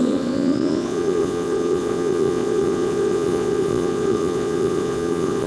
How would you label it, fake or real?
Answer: fake